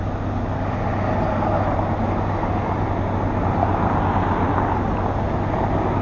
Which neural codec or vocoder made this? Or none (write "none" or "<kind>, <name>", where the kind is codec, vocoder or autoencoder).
none